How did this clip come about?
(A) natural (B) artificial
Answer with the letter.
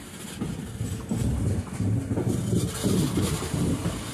A